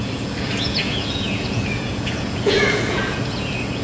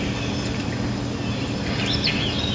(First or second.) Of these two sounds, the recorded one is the second